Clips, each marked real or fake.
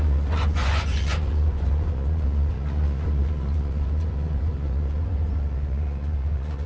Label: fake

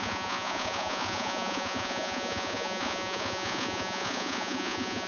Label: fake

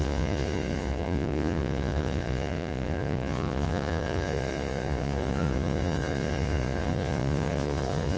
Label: fake